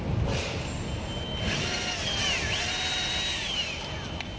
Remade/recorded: recorded